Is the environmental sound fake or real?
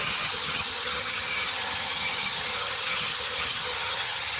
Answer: fake